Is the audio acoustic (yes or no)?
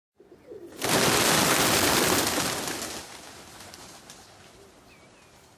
yes